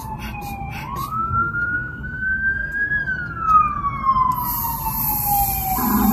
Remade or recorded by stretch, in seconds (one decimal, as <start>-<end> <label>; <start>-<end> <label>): 0.0-1.1 recorded; 1.1-2.9 remade; 2.9-6.1 recorded